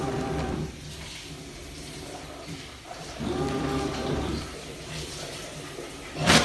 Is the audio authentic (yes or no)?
no